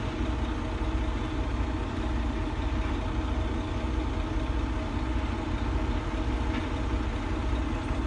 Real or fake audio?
real